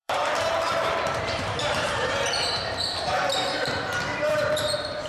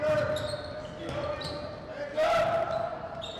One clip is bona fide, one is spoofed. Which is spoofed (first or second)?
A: first